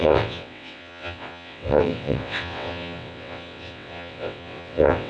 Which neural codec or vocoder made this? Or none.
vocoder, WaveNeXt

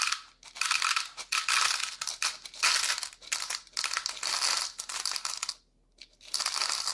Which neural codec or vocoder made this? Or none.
none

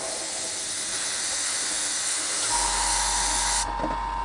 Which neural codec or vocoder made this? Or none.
none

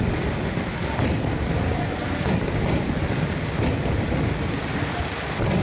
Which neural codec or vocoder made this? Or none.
none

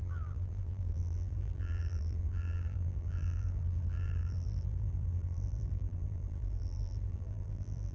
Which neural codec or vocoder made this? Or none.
vocoder, BigVGAN v2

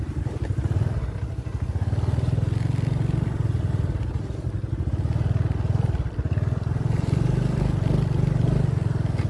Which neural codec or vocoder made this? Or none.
none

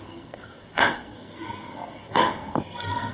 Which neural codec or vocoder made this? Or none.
codec, SNAC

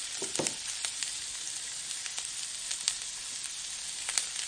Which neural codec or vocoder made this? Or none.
none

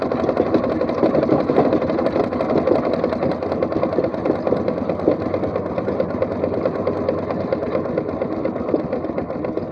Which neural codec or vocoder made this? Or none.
none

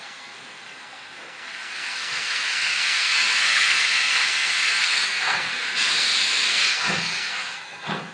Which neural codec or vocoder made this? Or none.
codec, SNAC